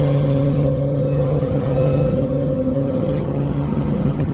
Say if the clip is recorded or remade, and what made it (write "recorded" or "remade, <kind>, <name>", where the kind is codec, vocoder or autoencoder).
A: remade, vocoder, HiFi-GAN